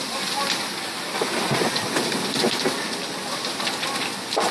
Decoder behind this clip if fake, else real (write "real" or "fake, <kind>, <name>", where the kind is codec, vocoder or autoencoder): real